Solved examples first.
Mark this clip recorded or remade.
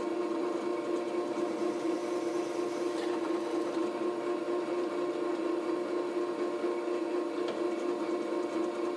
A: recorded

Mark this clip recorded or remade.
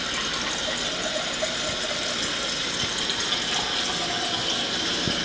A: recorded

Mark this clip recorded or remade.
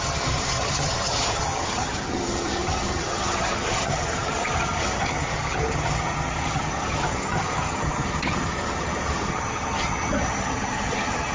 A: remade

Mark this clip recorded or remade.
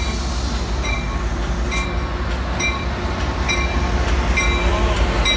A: recorded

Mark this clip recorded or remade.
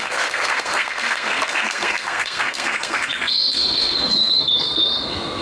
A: remade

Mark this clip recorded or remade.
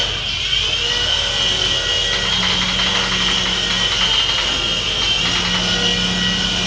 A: recorded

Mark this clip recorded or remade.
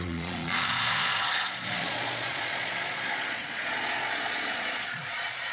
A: remade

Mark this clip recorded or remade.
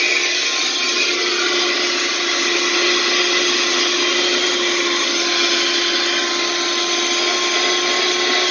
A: recorded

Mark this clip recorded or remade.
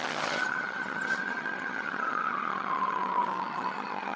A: remade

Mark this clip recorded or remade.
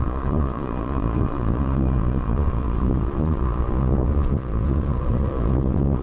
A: remade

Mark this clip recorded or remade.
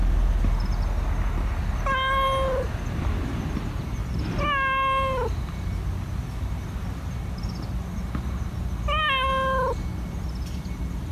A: recorded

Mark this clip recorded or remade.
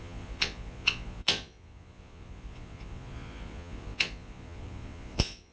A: remade